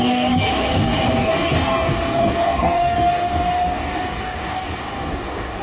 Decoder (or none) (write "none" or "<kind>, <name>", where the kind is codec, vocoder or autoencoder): codec, DAC